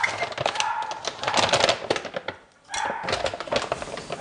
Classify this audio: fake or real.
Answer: real